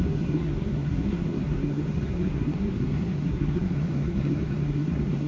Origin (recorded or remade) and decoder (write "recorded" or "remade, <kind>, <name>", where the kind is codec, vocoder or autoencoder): remade, codec, SNAC